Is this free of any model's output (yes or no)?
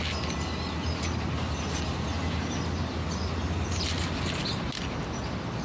yes